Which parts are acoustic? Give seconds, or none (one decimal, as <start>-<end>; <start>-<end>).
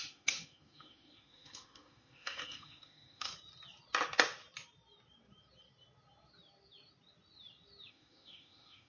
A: 3.3-7.9